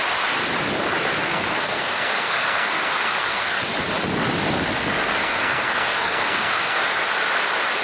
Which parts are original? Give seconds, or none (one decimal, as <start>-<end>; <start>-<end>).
0.0-1.3; 3.6-4.8; 6.8-7.8